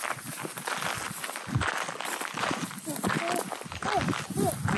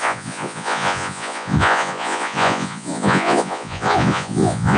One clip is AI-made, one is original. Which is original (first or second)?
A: first